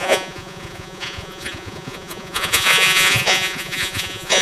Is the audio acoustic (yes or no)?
no